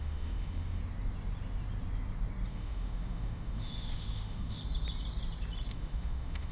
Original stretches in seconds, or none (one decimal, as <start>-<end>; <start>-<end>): 0.8-2.5; 4.6-5.7

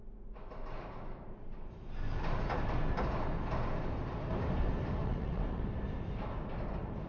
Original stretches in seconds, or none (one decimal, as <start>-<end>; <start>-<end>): 0.0-5.0; 5.6-7.1

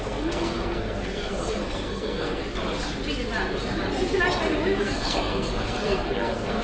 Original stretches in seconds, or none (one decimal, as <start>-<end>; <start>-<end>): 2.4-4.8

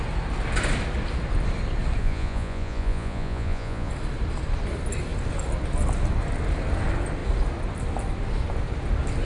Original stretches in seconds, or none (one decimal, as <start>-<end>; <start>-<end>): 0.0-2.0; 3.9-9.3

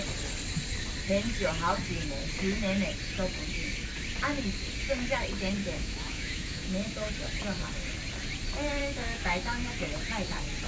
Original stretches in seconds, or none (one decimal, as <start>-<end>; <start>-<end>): 0.0-5.6; 7.1-8.8; 9.7-10.7